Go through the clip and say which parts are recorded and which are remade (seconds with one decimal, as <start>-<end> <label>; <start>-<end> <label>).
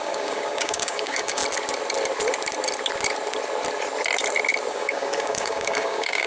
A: 0.0-1.4 remade; 1.4-4.7 recorded; 4.7-6.3 remade